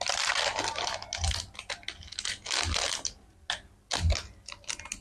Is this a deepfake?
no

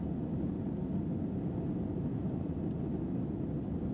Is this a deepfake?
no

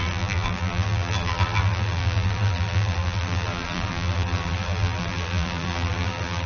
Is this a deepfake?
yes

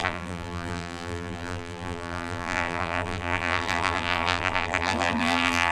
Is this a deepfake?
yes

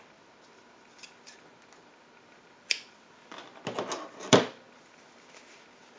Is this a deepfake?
no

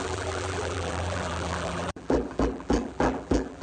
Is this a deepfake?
yes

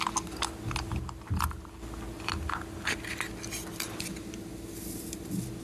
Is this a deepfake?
no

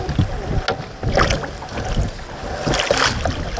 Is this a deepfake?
no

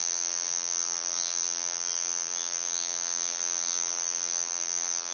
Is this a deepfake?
yes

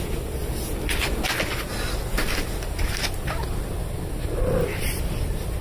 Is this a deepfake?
no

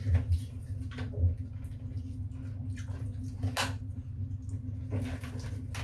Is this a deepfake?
no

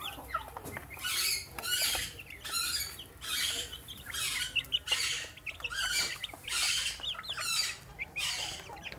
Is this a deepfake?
yes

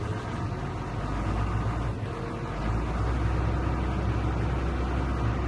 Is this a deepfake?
no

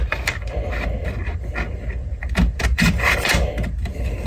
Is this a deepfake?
yes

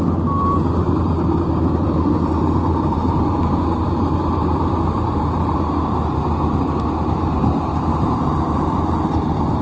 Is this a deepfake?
yes